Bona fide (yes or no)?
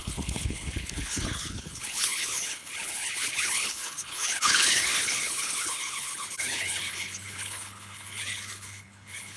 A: no